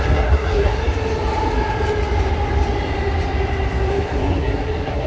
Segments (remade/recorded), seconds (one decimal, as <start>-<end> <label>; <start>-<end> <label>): 0.0-0.8 remade; 0.8-3.9 recorded; 3.9-5.1 remade